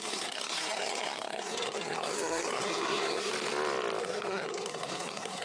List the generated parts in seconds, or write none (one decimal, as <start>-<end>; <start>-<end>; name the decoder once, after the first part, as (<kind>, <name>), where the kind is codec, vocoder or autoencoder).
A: 0.0-3.3 (codec, SNAC); 4.0-5.4